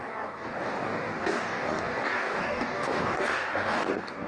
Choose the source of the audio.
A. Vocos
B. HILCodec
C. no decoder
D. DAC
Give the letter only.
D